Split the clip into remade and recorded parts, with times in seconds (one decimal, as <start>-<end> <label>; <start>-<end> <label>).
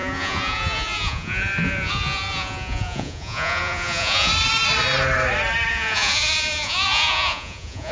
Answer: 0.0-4.3 remade; 4.3-5.7 recorded; 5.7-7.9 remade